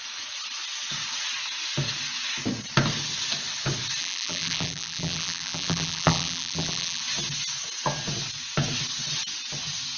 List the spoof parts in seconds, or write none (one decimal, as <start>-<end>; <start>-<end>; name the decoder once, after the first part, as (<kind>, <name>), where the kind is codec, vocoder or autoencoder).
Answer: 4.0-7.0 (vocoder, BigVGAN v2)